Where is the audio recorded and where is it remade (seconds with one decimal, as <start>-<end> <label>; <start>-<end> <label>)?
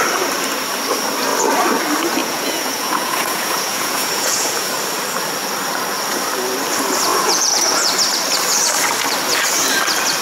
0.0-2.2 recorded; 2.2-4.7 remade; 4.7-7.1 recorded; 7.1-7.9 remade; 7.9-10.2 recorded